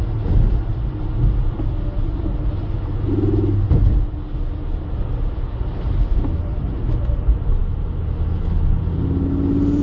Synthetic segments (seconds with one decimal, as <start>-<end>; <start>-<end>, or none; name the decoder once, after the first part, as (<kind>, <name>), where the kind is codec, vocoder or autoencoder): none